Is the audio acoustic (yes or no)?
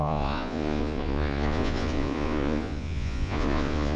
no